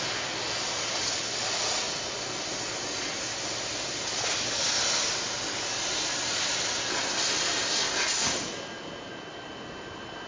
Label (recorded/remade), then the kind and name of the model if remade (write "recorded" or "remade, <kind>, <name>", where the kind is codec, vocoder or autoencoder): recorded